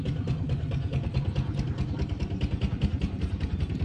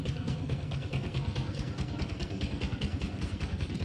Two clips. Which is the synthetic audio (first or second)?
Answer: second